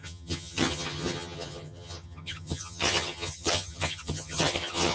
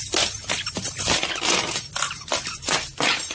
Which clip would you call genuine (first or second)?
second